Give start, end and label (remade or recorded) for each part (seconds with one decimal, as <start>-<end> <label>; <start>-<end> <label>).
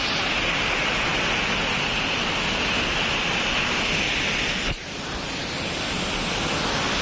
0.0-7.0 recorded